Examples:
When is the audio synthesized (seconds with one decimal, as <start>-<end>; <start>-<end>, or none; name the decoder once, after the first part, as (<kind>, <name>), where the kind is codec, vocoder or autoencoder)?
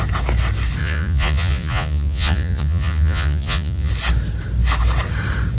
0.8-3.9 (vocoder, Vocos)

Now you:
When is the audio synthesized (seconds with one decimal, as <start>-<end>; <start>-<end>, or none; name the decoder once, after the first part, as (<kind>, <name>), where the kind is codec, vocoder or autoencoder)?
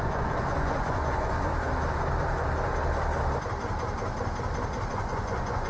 0.0-1.5 (vocoder, Vocos); 4.9-5.7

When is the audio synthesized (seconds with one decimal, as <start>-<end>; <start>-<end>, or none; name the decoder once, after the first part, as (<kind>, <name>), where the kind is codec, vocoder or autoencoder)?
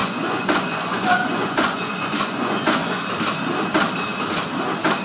0.0-3.0 (vocoder, Vocos)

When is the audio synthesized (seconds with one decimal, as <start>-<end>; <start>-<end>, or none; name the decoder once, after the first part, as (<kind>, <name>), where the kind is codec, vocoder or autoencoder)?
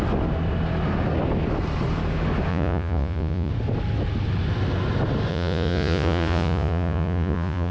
2.5-3.5 (vocoder, Vocos); 5.3-7.7